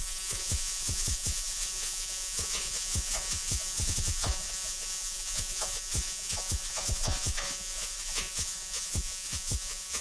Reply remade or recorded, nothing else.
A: remade